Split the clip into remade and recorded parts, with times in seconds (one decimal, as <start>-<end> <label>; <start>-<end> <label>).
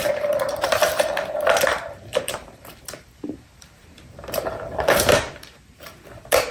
0.0-0.8 remade; 0.8-2.2 recorded; 2.2-6.5 remade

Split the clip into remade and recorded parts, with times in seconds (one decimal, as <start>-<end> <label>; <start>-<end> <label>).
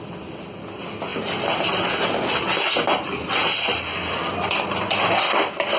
0.0-3.4 recorded; 3.4-5.8 remade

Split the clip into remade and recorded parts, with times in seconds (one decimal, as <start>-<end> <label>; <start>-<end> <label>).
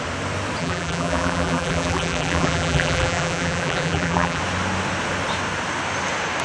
0.0-0.6 recorded; 0.6-4.4 remade; 4.4-6.4 recorded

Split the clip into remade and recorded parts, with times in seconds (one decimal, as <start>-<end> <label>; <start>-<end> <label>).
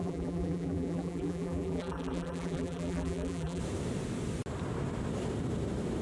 0.0-3.6 remade; 3.6-6.0 recorded